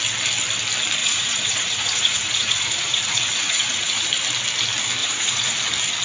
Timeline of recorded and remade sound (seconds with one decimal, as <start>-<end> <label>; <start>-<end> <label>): 0.0-1.0 recorded; 1.0-4.1 remade; 4.1-5.0 recorded; 5.0-5.6 remade; 5.6-6.0 recorded